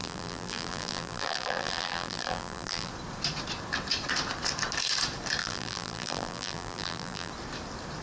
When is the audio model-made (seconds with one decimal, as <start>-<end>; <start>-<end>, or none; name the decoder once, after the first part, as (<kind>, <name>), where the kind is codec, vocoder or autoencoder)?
0.0-2.9 (vocoder, BigVGAN v2); 5.4-7.3